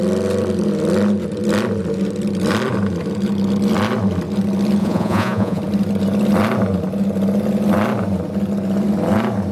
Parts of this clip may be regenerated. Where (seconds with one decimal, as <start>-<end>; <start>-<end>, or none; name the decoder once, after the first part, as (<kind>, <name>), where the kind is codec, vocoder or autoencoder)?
4.8-5.6 (vocoder, Vocos)